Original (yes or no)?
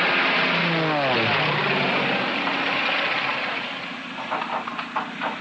yes